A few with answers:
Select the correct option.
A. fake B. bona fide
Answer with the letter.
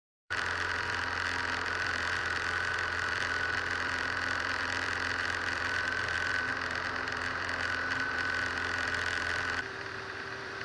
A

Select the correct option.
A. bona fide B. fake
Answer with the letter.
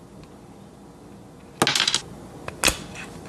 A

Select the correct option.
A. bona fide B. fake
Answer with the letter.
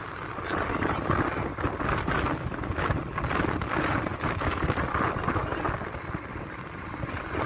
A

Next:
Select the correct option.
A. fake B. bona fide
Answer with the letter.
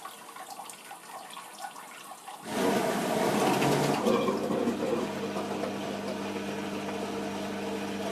B